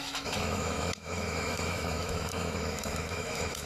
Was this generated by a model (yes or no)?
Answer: yes